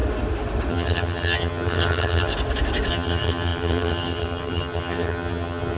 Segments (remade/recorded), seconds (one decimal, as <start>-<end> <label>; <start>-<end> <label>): 0.0-0.7 recorded; 0.7-2.3 remade; 2.3-2.9 recorded; 2.9-5.8 remade